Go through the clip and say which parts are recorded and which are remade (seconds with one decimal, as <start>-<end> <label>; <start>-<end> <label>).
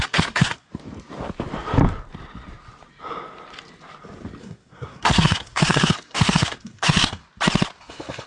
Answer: 0.0-0.7 remade; 0.7-4.4 recorded; 4.4-7.2 remade; 7.2-7.8 recorded; 7.8-8.3 remade